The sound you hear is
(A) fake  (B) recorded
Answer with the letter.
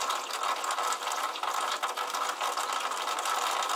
B